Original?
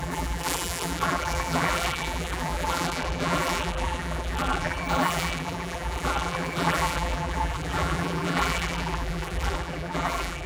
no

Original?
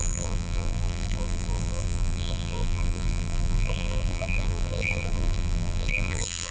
no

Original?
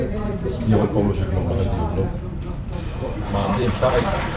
no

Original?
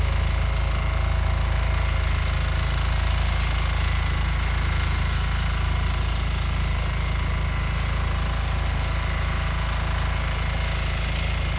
yes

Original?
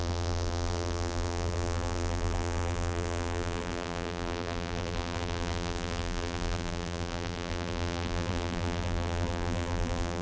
no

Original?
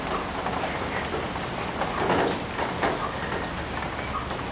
yes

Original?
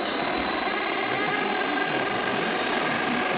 yes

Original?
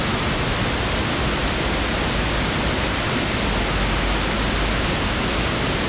yes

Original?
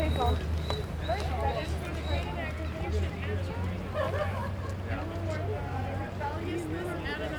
yes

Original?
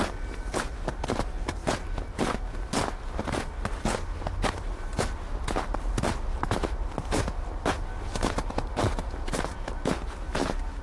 yes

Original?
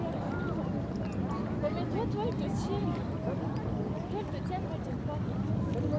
yes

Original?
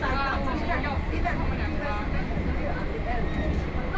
yes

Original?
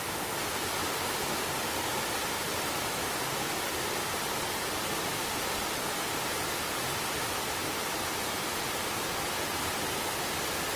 yes